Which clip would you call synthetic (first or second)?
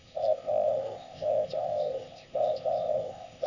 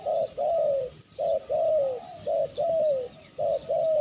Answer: first